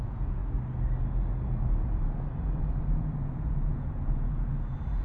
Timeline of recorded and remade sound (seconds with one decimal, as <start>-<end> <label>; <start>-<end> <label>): 0.0-0.4 remade; 0.4-2.4 recorded; 2.4-5.0 remade